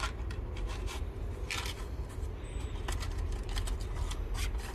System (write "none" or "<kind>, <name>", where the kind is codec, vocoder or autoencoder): none